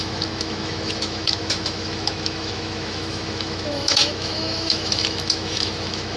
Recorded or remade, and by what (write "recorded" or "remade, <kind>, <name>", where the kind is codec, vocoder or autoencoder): remade, autoencoder, DAC-VAE